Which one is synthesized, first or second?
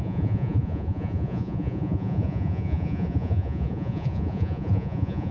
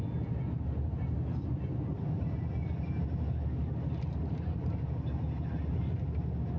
first